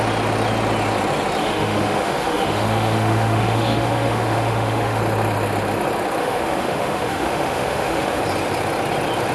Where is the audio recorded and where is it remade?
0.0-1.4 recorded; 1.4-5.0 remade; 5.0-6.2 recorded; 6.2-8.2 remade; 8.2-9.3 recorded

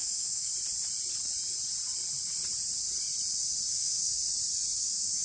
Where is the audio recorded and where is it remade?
0.0-0.5 remade; 0.5-3.6 recorded; 3.6-4.2 remade; 4.2-4.8 recorded; 4.8-5.2 remade

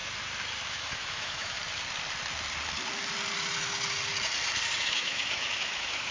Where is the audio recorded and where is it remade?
0.0-0.7 recorded; 0.7-1.6 remade; 1.6-4.8 recorded; 4.8-6.1 remade

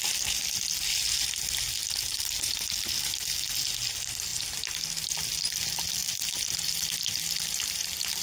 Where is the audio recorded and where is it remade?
0.0-8.2 recorded

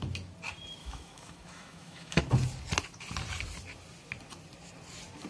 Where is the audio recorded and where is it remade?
0.0-0.8 recorded; 0.8-2.2 remade; 2.2-5.3 recorded